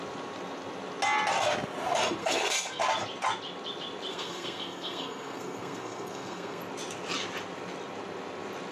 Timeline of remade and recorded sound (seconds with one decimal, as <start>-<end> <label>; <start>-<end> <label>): 0.0-2.2 recorded; 2.2-2.8 remade; 2.8-4.1 recorded; 4.1-6.6 remade; 6.6-8.7 recorded